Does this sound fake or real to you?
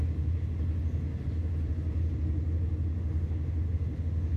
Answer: real